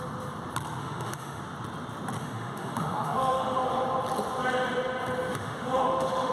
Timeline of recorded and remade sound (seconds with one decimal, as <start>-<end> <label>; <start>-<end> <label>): 0.0-0.8 recorded; 0.8-1.4 remade; 1.4-2.2 recorded; 2.2-3.7 remade; 3.7-5.3 recorded; 5.3-6.3 remade